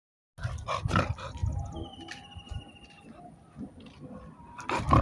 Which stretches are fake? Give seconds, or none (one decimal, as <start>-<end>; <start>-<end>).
none